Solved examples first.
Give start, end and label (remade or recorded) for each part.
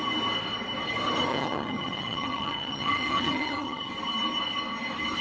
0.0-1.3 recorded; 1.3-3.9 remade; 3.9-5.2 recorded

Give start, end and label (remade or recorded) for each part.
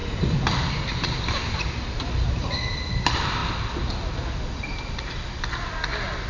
0.0-6.3 recorded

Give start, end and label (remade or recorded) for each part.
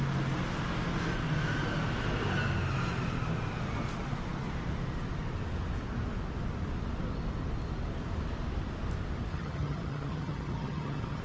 0.0-9.3 recorded; 9.3-11.2 remade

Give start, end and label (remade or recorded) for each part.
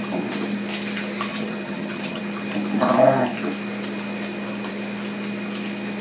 0.0-1.3 recorded; 1.3-2.2 remade; 2.2-6.0 recorded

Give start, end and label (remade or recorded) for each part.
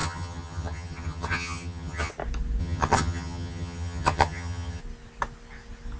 0.0-2.1 remade; 2.1-2.6 recorded; 2.6-4.8 remade; 4.8-6.0 recorded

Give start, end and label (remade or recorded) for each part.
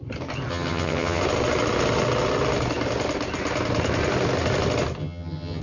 0.0-0.5 recorded; 0.5-1.2 remade; 1.2-5.0 recorded; 5.0-5.6 remade